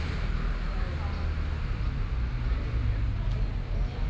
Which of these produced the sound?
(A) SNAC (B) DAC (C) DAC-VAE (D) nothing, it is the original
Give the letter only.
D